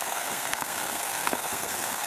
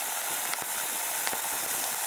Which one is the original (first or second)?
second